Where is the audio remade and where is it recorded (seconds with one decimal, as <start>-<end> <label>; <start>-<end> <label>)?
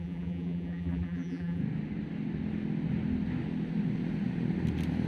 0.0-1.6 remade; 1.6-5.1 recorded